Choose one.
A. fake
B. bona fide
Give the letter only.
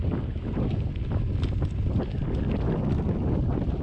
B